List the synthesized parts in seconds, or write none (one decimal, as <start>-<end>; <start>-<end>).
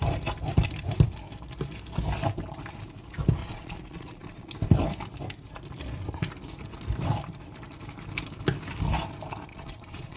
3.4-4.5; 9.5-10.2